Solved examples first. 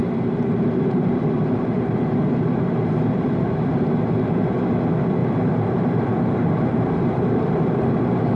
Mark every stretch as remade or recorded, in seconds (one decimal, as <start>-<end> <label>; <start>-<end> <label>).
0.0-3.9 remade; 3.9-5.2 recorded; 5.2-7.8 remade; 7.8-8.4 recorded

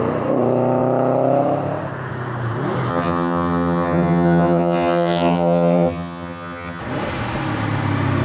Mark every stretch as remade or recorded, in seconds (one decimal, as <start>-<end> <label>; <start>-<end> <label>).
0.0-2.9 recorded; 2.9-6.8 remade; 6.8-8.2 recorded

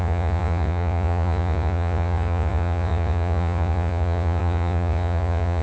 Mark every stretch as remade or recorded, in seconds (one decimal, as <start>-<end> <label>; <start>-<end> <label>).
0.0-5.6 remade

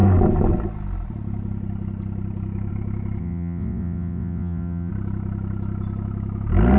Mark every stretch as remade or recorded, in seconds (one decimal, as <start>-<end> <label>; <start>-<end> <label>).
0.0-3.2 recorded; 3.2-4.9 remade; 4.9-6.8 recorded